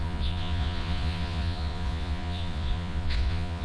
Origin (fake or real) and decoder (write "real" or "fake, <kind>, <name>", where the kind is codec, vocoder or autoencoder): fake, vocoder, Vocos